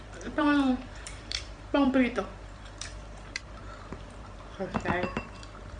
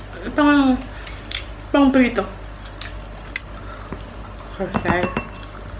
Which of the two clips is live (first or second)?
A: second